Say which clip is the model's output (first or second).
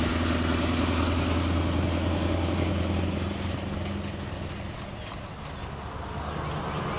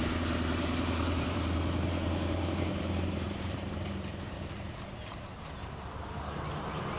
second